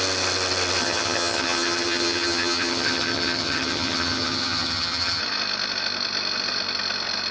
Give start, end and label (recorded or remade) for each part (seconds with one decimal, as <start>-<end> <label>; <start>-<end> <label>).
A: 0.0-0.8 recorded; 0.8-5.2 remade; 5.2-7.3 recorded